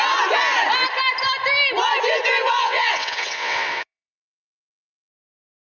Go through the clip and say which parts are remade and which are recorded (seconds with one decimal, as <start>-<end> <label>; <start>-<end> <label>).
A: 0.0-2.6 recorded; 2.6-5.1 remade; 5.1-5.8 recorded